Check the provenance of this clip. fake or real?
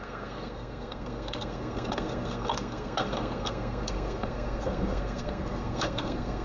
fake